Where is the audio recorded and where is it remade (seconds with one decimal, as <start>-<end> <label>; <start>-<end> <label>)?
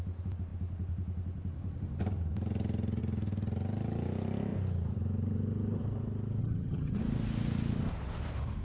0.0-6.4 recorded; 6.4-7.0 remade; 7.0-8.6 recorded